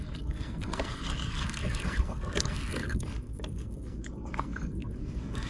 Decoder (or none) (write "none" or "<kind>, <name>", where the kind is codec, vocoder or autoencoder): codec, SNAC